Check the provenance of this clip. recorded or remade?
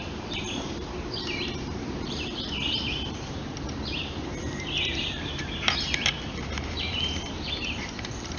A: remade